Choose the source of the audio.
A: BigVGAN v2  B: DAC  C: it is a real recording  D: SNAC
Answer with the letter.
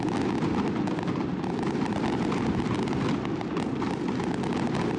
C